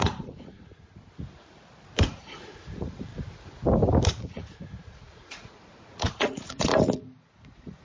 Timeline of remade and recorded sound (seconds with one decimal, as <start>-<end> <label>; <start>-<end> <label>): 0.0-0.9 remade; 0.9-2.1 recorded; 2.1-3.1 remade; 3.1-4.2 recorded; 4.2-6.7 remade; 6.7-7.2 recorded; 7.2-7.8 remade